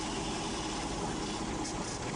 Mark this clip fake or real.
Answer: real